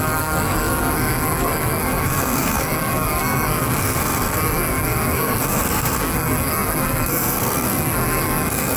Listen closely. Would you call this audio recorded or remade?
remade